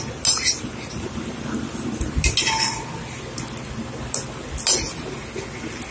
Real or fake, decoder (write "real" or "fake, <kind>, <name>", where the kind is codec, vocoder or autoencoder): real